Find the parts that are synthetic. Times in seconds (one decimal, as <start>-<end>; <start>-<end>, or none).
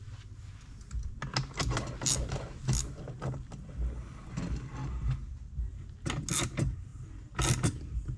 none